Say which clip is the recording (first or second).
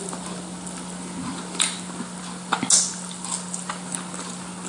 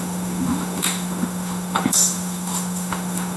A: first